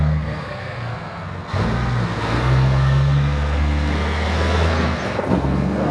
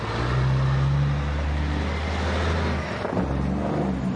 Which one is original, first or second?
second